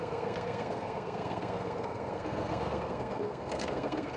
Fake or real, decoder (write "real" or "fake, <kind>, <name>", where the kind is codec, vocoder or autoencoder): fake, codec, SNAC